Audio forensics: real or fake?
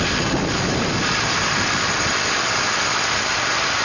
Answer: real